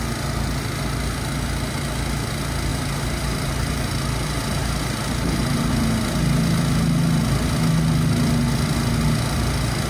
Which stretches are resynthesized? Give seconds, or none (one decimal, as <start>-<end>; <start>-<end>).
2.7-5.7